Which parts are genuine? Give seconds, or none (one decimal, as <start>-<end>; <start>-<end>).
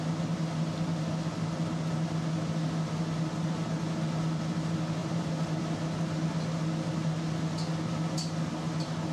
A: 0.0-5.0; 5.6-9.1